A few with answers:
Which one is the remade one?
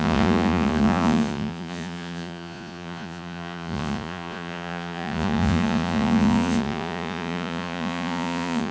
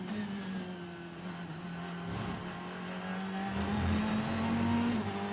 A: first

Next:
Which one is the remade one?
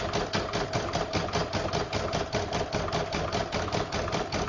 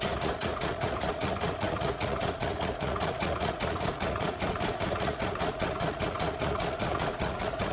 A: second